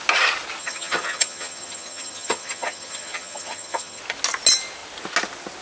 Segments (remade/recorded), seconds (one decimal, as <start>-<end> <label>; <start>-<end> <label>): 0.0-0.6 recorded; 0.6-4.0 remade; 4.0-5.6 recorded